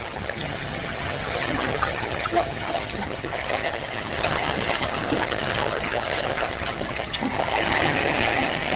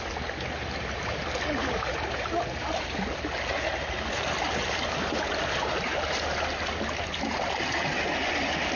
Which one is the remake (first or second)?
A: first